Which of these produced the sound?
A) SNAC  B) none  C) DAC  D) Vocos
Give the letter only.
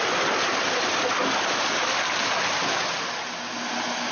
B